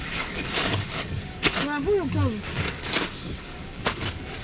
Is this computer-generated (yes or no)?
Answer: yes